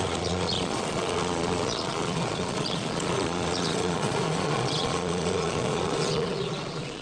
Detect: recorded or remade remade